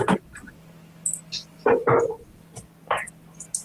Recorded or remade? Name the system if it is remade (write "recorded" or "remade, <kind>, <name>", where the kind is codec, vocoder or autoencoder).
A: recorded